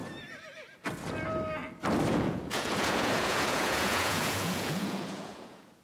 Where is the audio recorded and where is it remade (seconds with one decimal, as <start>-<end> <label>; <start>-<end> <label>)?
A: 0.0-2.1 recorded; 2.1-5.8 remade